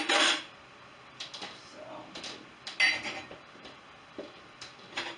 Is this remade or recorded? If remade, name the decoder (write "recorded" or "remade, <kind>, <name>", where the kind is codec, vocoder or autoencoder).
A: recorded